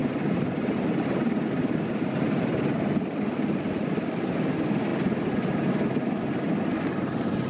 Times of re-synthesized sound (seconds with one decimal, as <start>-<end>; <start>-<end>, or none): 0.0-4.5